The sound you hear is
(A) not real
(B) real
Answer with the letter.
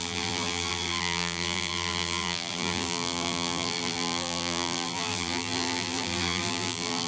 A